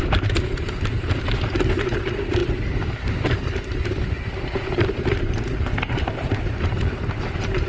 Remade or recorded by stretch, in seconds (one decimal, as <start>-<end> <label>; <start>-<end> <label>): 0.0-7.7 remade